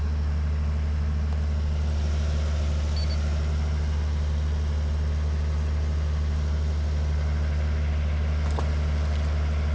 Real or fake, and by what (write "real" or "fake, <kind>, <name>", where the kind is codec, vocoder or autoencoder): real